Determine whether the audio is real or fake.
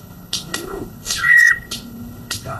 fake